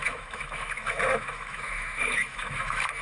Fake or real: fake